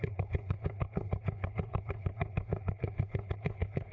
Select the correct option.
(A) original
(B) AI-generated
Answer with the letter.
B